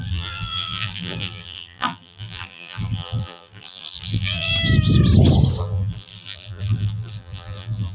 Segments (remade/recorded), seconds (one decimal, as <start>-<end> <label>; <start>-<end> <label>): 0.0-4.5 remade; 4.5-5.6 recorded; 5.6-7.9 remade